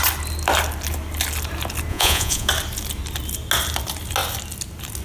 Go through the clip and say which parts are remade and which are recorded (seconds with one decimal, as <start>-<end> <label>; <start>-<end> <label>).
0.0-1.9 recorded; 1.9-2.5 remade; 2.5-5.0 recorded